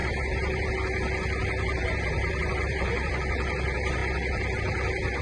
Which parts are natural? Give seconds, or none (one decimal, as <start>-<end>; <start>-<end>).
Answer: 0.7-1.8; 3.1-5.2